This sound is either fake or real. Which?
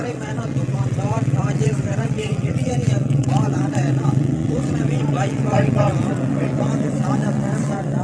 fake